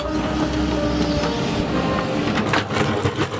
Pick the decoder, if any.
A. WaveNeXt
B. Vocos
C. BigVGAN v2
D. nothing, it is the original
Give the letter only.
D